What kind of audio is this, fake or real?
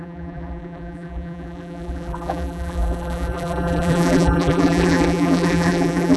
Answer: fake